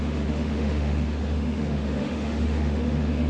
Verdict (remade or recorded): remade